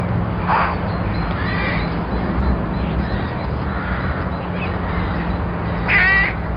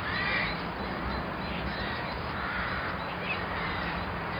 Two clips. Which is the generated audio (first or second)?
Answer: second